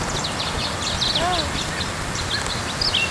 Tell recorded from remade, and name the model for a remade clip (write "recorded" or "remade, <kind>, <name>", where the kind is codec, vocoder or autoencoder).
recorded